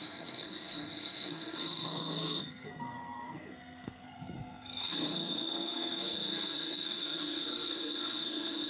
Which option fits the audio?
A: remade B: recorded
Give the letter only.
A